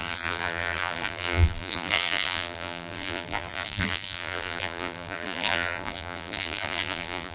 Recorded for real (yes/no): no